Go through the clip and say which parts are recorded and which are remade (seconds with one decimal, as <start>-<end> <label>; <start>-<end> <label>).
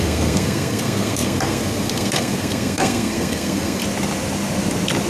0.0-3.8 remade; 3.8-5.1 recorded